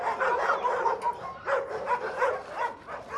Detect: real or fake real